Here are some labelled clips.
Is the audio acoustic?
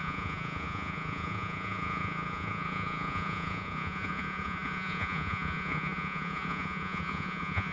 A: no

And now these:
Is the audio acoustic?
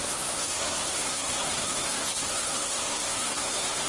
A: no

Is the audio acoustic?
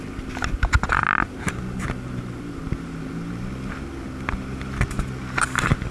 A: yes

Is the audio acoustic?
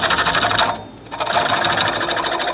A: yes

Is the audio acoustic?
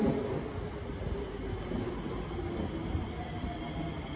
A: yes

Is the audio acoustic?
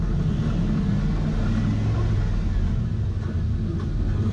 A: yes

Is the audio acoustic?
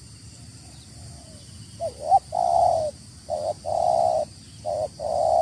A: yes